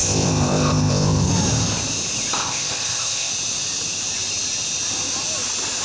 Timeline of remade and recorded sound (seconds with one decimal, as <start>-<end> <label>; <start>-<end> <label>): 0.0-1.3 remade; 1.3-2.4 recorded; 2.4-3.3 remade; 3.3-5.8 recorded